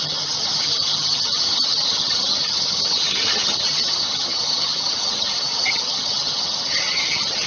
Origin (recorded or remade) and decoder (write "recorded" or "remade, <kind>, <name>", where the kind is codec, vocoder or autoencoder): remade, vocoder, HiFi-GAN